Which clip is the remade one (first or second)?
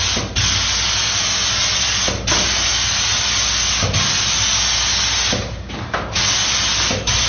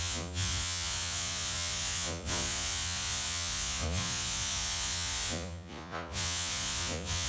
second